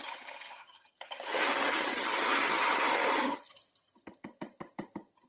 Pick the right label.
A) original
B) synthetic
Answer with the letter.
B